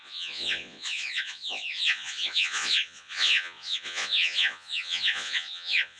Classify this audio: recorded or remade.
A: remade